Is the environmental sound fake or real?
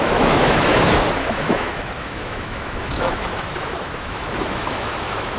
fake